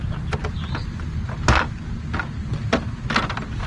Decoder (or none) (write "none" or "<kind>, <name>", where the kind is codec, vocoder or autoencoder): none